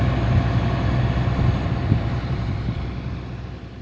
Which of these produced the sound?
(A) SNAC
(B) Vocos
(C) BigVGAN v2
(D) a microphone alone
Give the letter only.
D